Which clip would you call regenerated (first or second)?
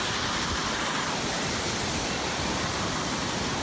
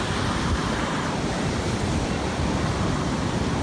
second